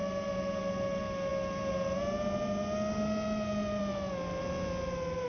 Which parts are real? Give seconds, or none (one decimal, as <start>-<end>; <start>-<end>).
0.0-5.3